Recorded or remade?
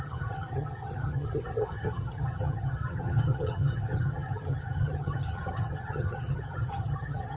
remade